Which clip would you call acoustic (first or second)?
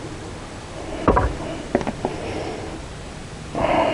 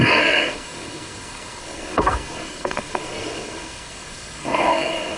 first